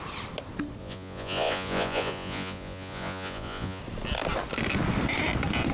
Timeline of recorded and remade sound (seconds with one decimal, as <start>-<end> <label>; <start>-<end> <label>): 0.0-0.8 recorded; 0.8-3.8 remade; 3.8-5.7 recorded